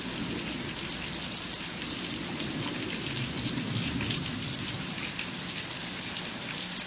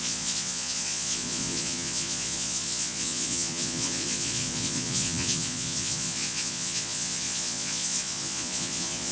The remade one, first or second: second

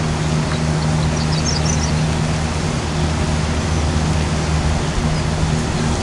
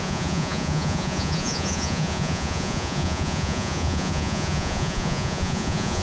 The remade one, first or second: second